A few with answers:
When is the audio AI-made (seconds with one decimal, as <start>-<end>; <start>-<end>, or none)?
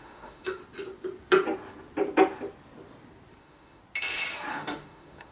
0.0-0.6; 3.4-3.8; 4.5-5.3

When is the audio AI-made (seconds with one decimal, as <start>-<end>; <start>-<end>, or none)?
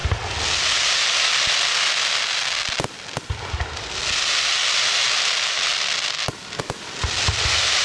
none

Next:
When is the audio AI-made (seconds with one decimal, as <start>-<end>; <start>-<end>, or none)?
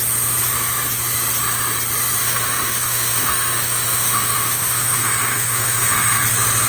2.2-6.2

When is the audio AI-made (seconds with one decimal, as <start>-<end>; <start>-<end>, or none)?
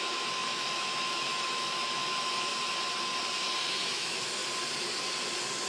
0.0-2.5; 3.7-4.4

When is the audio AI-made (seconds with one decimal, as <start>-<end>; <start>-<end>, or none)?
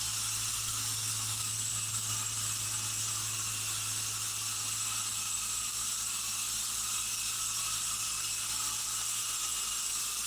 0.5-1.7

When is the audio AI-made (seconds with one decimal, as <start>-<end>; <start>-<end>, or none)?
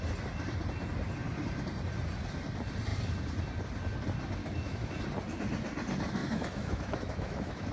4.4-4.9; 6.2-7.7